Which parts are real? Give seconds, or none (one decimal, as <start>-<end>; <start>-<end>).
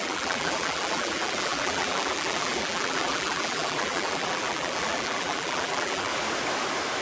6.1-7.0